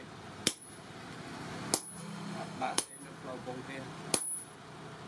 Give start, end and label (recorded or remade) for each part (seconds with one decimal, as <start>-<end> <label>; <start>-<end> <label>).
0.0-2.0 recorded; 2.0-2.9 remade; 2.9-5.1 recorded